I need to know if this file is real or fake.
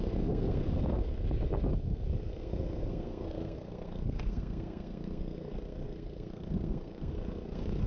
fake